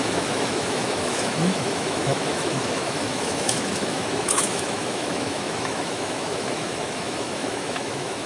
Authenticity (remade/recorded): remade